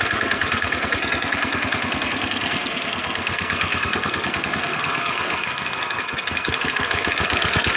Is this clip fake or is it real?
fake